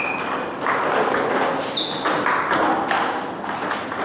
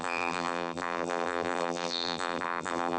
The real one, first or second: first